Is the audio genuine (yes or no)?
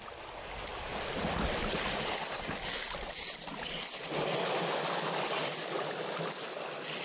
yes